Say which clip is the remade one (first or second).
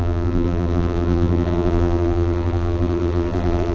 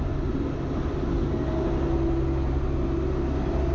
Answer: first